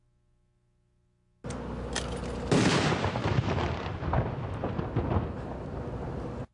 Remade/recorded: recorded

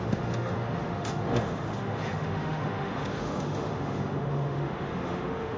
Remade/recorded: remade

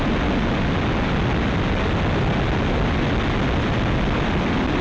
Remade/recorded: recorded